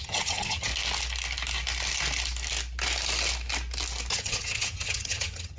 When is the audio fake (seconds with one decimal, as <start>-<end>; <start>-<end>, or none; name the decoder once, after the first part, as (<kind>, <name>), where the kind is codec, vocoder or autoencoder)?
0.0-0.7 (vocoder, HiFi-GAN); 4.1-5.6